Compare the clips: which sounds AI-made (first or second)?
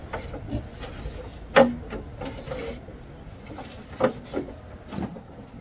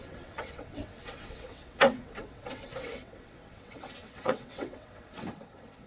second